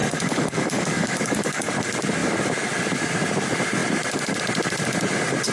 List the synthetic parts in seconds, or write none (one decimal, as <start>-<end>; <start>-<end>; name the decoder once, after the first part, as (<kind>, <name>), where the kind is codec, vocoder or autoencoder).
0.0-1.7 (codec, DAC)

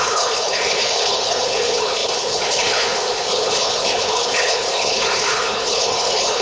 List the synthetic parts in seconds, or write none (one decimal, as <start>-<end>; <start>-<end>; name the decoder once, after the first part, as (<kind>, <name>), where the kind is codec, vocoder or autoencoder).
0.0-6.4 (codec, HILCodec)